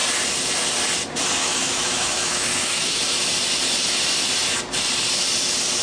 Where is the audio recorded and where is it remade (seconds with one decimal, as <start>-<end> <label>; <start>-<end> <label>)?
0.0-1.4 recorded; 1.4-3.0 remade; 3.0-5.8 recorded